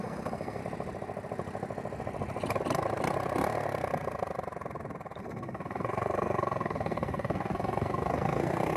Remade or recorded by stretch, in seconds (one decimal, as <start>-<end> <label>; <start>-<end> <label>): 0.0-0.6 remade; 0.6-5.2 recorded; 5.2-8.8 remade